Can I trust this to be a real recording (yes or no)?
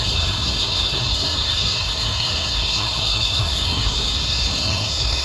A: no